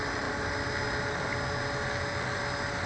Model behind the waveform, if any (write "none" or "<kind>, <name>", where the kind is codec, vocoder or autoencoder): none